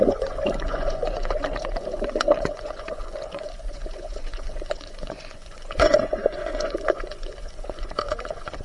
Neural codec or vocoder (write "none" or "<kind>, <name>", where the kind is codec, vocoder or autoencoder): vocoder, Vocos